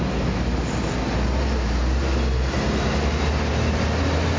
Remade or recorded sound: recorded